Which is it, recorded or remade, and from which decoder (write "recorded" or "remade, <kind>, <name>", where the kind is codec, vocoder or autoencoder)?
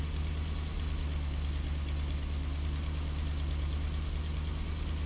recorded